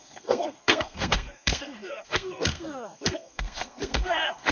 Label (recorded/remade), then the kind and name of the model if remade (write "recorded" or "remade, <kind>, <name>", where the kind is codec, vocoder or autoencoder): remade, codec, SNAC